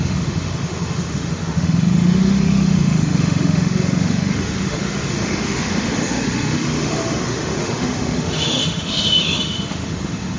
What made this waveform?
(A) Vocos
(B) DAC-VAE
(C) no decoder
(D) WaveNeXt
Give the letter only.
B